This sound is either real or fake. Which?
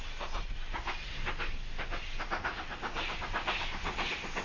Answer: real